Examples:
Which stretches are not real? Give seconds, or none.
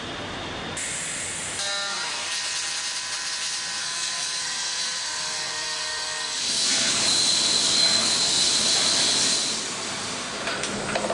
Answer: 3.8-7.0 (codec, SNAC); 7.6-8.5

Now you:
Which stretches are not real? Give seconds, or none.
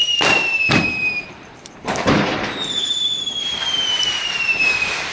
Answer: 0.0-5.1 (vocoder, BigVGAN v2)